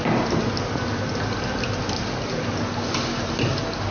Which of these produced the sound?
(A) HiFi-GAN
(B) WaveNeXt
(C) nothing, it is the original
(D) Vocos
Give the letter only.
C